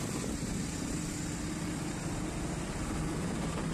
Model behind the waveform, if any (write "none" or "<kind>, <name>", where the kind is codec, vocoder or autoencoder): none